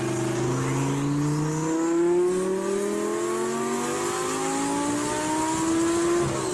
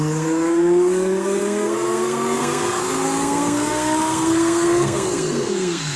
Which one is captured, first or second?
first